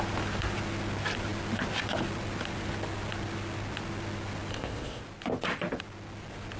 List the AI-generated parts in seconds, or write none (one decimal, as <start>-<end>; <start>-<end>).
4.5-5.0

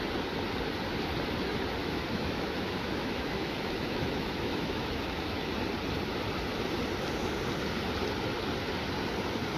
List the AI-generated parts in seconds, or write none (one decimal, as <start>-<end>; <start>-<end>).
1.8-5.5

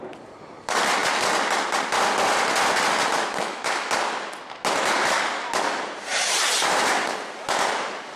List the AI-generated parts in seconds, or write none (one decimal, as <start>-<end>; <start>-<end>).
3.4-3.9

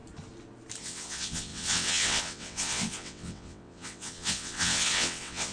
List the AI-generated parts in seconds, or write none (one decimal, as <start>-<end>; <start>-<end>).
0.8-5.5

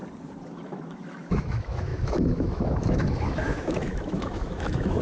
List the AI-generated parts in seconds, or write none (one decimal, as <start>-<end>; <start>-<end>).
0.5-5.0

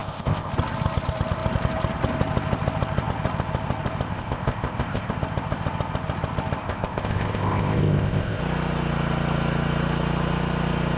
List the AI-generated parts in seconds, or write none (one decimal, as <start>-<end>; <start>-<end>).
0.0-0.5; 4.1-5.1; 6.6-8.4

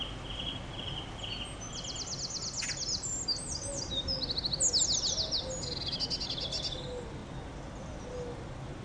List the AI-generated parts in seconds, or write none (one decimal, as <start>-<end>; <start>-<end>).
none